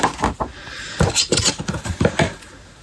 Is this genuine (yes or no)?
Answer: yes